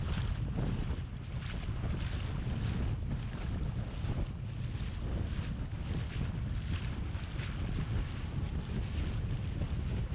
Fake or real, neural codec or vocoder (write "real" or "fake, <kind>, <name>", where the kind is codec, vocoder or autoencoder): real